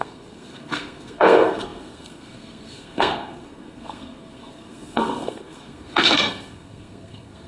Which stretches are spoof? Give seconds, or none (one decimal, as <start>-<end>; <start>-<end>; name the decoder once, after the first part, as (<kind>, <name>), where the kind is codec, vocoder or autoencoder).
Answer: 0.0-7.5 (codec, SNAC)